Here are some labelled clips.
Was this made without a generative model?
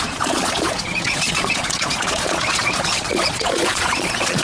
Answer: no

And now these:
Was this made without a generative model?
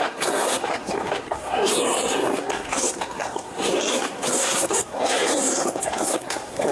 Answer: no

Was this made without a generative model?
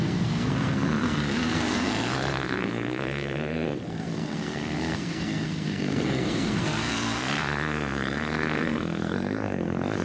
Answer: no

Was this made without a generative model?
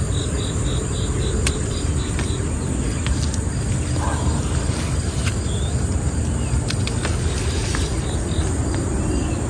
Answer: yes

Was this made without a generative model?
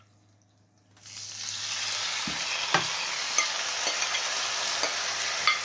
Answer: yes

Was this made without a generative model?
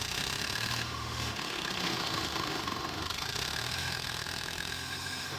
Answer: no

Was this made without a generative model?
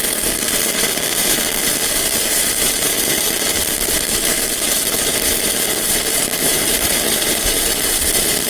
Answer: no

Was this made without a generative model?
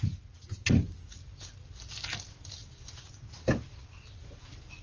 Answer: yes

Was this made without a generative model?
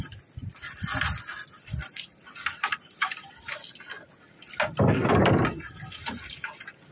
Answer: yes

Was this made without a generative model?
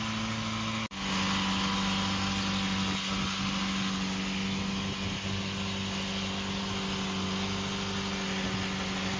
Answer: yes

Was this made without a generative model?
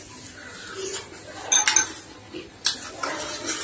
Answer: yes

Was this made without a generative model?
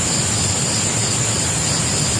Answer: yes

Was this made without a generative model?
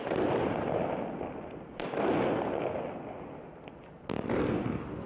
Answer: yes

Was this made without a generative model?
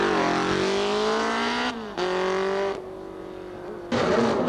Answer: yes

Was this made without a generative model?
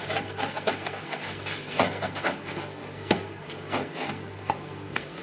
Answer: no